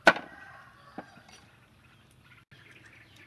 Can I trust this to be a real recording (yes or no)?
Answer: yes